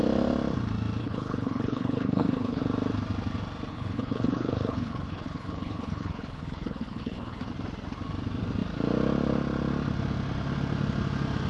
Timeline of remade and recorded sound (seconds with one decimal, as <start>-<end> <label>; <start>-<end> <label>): 0.0-1.0 recorded; 1.0-2.6 remade; 2.6-3.7 recorded; 3.7-7.5 remade; 7.5-11.5 recorded